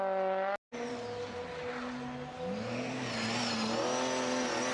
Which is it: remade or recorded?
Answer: recorded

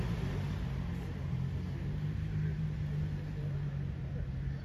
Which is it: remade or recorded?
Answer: recorded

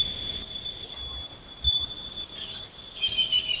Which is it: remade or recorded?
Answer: remade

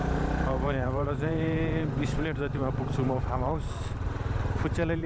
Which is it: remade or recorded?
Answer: remade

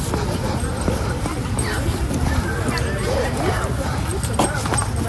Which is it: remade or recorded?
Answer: recorded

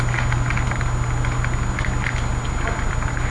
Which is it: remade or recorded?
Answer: recorded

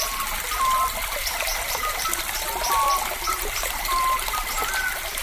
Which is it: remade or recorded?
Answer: remade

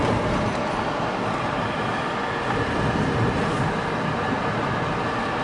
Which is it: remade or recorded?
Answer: recorded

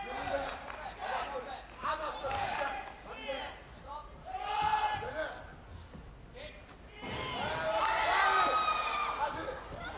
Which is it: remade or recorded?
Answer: recorded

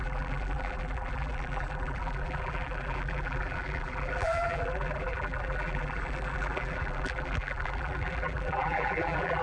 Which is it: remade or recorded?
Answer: remade